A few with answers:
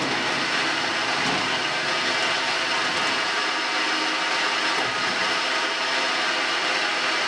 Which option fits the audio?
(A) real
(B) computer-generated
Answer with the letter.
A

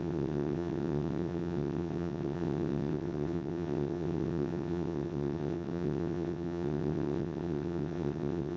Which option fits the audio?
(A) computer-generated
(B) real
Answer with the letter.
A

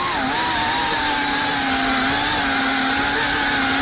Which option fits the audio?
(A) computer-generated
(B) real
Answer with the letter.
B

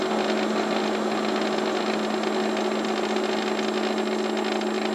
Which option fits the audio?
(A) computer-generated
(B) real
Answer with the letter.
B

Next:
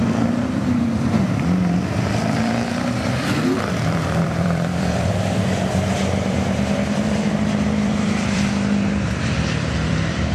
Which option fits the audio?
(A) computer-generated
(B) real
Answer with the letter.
A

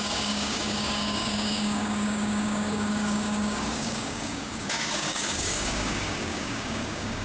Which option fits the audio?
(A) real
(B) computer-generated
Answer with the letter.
B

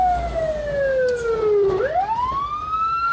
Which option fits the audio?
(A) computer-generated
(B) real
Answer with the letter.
B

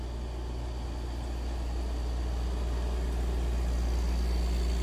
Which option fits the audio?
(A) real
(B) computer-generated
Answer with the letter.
A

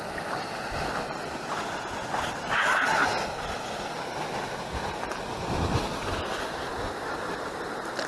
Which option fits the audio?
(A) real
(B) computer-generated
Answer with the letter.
A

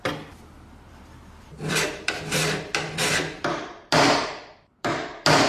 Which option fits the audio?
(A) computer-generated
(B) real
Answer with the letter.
A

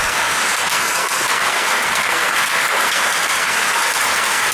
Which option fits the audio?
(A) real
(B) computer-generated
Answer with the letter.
B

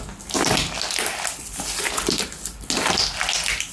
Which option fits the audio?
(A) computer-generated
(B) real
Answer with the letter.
B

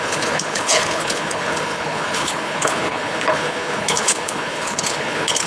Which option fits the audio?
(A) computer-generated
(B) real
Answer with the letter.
A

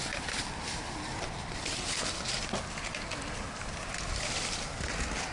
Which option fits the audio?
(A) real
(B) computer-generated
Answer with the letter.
A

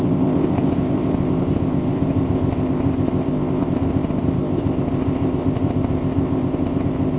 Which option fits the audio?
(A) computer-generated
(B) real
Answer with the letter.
A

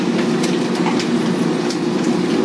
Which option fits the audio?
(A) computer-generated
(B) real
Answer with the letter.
B